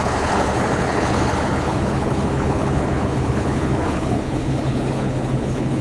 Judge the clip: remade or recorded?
remade